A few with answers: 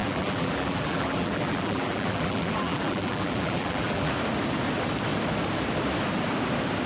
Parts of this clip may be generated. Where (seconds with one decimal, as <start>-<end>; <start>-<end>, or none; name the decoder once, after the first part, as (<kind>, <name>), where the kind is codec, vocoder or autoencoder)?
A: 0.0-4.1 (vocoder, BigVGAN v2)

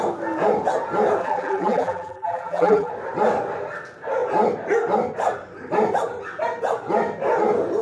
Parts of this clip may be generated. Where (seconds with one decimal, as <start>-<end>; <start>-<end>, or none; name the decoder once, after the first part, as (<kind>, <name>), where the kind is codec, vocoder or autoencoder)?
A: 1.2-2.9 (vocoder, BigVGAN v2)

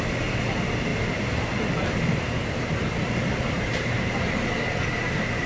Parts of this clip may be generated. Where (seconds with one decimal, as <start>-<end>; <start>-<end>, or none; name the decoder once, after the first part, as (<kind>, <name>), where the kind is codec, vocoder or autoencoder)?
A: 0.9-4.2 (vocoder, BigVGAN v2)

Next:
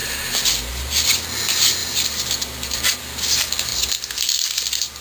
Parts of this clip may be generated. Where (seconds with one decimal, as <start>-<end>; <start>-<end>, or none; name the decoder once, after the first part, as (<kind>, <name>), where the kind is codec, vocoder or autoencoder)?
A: 1.8-3.0 (vocoder, BigVGAN v2)

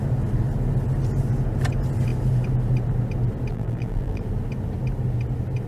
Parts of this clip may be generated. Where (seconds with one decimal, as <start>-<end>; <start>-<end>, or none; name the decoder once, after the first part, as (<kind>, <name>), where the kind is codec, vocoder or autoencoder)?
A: 3.5-4.2 (vocoder, BigVGAN v2)

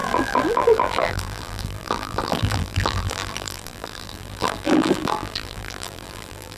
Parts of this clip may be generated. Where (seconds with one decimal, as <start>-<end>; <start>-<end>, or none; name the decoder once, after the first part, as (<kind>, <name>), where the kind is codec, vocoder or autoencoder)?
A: 0.0-6.6 (vocoder, BigVGAN v2)